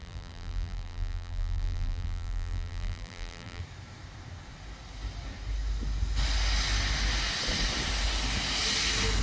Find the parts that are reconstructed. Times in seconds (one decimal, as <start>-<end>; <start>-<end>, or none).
0.0-3.6